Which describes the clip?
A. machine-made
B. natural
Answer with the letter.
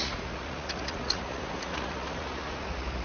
A